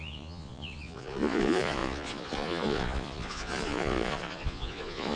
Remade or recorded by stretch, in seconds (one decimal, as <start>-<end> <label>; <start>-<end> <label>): 0.0-5.2 remade